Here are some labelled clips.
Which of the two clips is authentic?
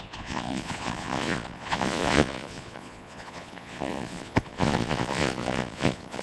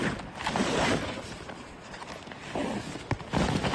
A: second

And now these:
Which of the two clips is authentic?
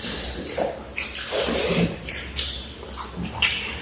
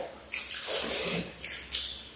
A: second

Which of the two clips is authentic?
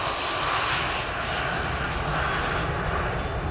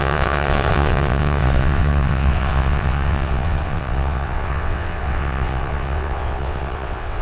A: first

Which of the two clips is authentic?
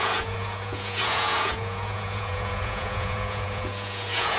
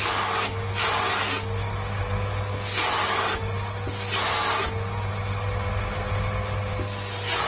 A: second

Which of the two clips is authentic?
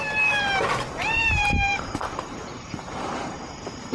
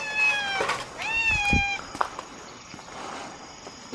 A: second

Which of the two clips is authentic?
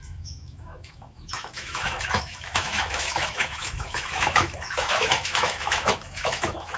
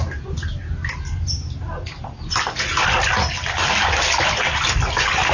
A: second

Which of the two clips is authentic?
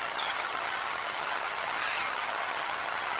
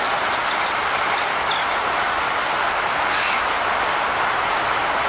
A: second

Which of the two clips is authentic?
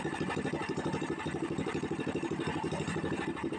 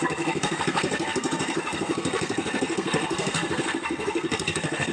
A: first